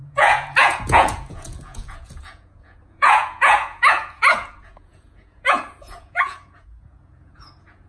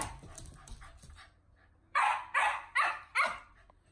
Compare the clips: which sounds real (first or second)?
second